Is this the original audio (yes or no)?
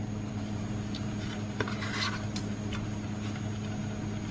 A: yes